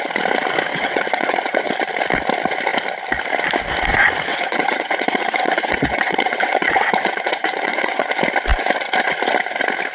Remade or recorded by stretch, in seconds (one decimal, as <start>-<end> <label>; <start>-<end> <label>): 0.0-0.7 recorded; 0.7-1.7 remade; 1.7-4.3 recorded; 4.3-8.1 remade; 8.1-9.9 recorded